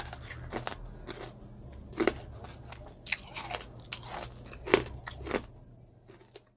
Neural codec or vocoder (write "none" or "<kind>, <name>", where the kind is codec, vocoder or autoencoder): none